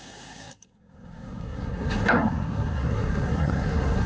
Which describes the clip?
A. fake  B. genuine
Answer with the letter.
A